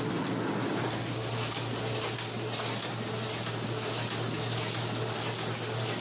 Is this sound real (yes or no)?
yes